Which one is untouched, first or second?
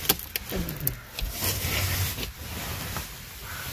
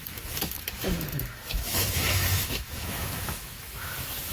first